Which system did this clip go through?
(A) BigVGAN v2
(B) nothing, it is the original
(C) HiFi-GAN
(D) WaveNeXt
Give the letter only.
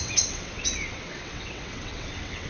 D